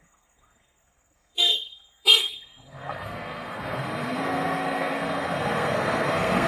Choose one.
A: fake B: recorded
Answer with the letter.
A